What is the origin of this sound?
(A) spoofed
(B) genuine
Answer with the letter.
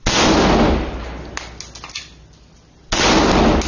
B